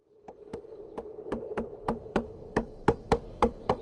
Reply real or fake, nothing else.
fake